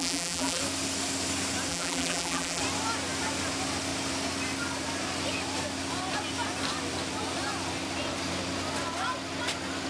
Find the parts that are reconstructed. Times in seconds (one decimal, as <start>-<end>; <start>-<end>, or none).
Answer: 0.0-0.6; 1.7-2.6